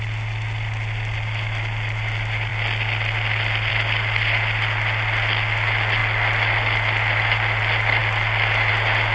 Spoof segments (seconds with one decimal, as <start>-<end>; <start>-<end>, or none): none